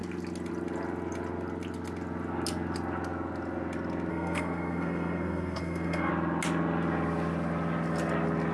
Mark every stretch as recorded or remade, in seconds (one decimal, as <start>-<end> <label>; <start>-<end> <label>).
0.0-4.1 recorded; 4.1-6.1 remade; 6.1-8.5 recorded